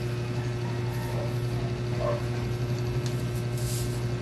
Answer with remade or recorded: recorded